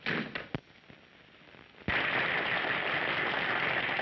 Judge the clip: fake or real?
real